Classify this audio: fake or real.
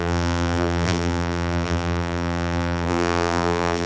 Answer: fake